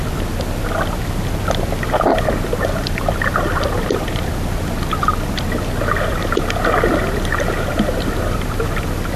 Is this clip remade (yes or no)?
no